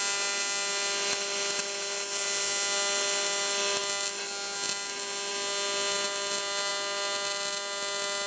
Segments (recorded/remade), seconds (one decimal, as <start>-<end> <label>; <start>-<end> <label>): 0.0-8.3 recorded

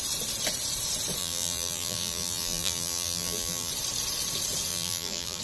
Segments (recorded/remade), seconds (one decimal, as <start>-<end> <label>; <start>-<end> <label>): 0.0-1.2 recorded; 1.2-3.7 remade; 3.7-4.7 recorded; 4.7-5.4 remade

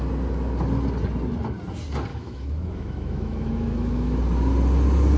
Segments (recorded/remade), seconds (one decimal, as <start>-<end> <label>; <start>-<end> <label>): 0.0-2.1 recorded; 2.1-4.2 remade; 4.2-5.2 recorded

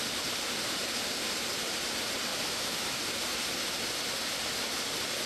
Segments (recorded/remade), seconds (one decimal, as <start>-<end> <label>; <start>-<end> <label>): 0.0-2.3 recorded; 2.3-3.0 remade; 3.0-5.3 recorded

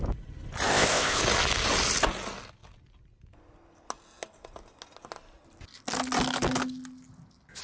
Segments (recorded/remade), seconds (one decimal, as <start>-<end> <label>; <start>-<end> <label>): 0.0-0.7 recorded; 0.7-1.2 remade; 1.2-7.6 recorded

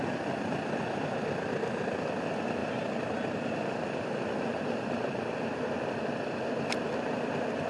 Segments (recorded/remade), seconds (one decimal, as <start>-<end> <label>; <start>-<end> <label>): 0.0-7.7 recorded